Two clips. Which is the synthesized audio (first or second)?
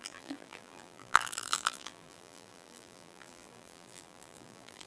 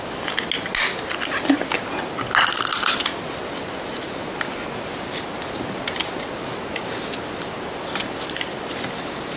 first